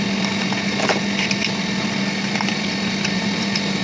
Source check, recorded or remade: remade